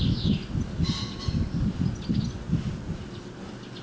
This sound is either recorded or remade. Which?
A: recorded